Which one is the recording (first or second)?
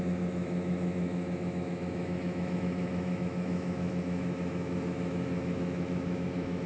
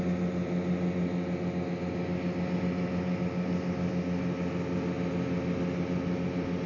second